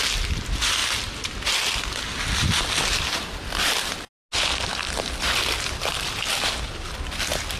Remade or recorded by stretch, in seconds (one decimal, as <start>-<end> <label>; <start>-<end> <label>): 0.0-7.6 recorded